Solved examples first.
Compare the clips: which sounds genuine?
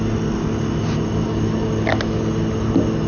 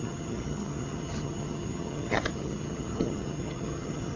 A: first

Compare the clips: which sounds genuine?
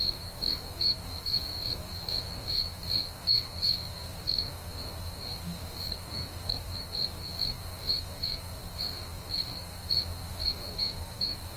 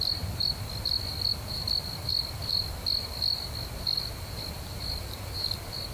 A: second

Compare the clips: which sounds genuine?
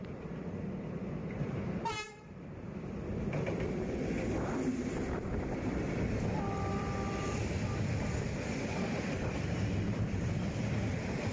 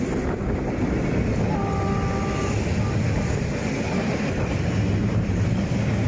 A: second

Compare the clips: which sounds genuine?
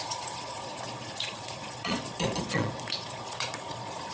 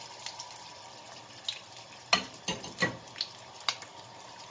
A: second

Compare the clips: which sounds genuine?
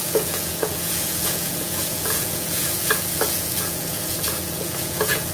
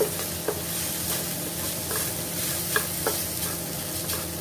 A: second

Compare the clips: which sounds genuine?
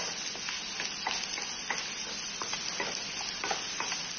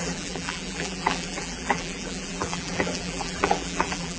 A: first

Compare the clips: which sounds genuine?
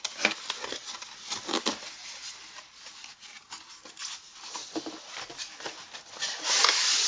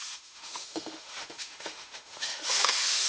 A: first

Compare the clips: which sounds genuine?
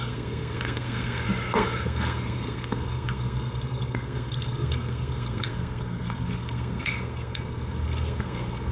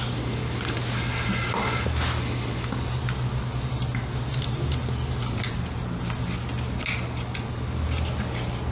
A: second